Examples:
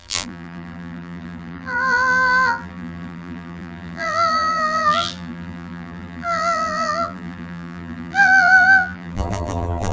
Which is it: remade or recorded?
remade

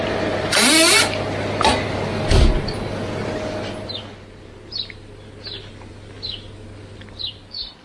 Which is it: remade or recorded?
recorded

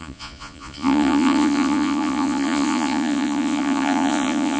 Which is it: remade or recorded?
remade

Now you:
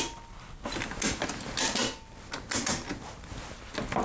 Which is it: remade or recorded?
recorded